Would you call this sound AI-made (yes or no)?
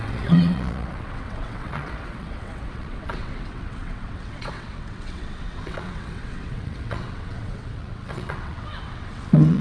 yes